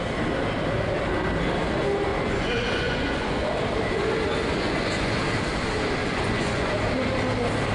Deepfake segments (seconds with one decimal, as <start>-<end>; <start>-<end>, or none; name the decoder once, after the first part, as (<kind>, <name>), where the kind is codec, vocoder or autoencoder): 2.1-3.5 (vocoder, Vocos); 4.5-5.2; 6.0-6.7